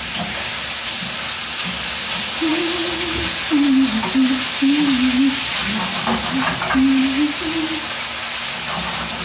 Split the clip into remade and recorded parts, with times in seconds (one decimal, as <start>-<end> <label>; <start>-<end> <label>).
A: 0.0-9.2 recorded